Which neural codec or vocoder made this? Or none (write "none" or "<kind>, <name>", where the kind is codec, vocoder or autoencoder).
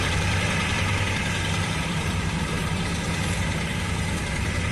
vocoder, BigVGAN v2